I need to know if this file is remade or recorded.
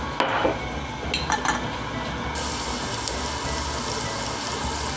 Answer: recorded